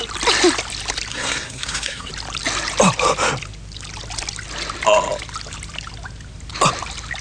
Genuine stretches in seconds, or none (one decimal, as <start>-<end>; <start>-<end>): 0.0-1.1; 2.1-7.2